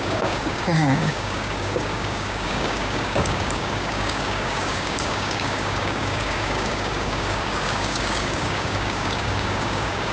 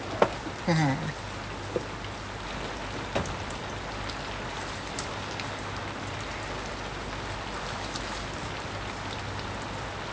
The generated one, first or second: first